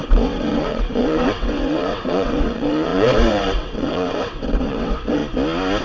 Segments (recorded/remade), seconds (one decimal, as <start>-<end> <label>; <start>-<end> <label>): 0.0-5.2 remade; 5.2-5.8 recorded